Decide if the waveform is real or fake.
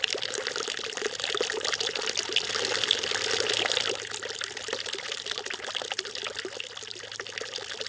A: real